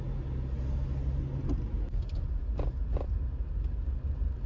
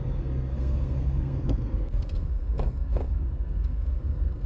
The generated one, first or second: second